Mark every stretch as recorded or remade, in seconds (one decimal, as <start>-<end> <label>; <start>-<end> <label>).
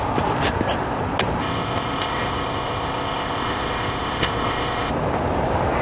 0.0-1.4 recorded; 1.4-4.9 remade; 4.9-5.8 recorded